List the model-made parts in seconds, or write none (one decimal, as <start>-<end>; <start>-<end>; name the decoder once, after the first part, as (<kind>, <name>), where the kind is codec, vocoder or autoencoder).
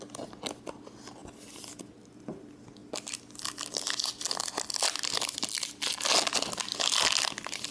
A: none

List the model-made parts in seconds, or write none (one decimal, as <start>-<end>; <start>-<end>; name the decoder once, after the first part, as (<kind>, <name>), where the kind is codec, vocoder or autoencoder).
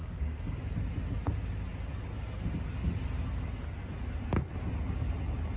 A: 0.0-0.6 (codec, DAC)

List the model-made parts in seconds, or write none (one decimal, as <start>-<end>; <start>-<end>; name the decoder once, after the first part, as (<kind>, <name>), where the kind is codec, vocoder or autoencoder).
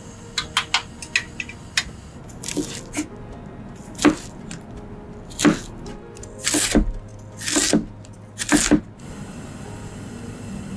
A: none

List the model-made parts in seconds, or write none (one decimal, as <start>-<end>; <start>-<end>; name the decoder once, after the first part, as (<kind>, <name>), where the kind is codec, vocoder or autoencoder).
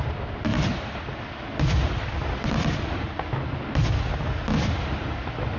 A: none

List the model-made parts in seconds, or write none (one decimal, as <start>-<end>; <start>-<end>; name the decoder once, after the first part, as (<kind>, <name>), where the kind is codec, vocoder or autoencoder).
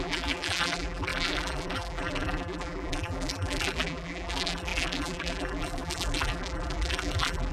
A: 0.0-7.5 (vocoder, BigVGAN v2)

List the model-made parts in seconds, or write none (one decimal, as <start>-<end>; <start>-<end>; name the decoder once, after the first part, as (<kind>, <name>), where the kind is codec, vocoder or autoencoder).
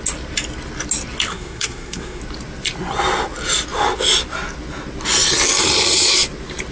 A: 1.3-2.2 (codec, SNAC)